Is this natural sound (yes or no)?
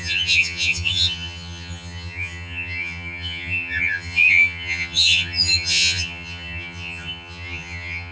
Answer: no